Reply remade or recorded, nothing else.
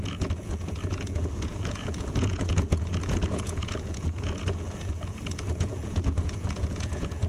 remade